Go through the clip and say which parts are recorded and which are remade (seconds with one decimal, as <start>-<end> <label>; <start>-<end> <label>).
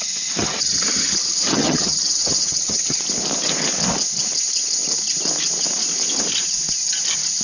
0.0-0.4 recorded; 0.4-3.0 remade; 3.0-7.4 recorded